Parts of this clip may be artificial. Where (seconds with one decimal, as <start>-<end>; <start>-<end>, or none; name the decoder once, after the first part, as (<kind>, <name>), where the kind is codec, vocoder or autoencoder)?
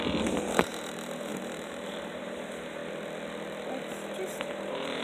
0.0-2.8 (vocoder, BigVGAN v2); 4.4-5.0